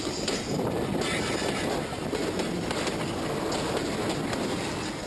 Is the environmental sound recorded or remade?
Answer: recorded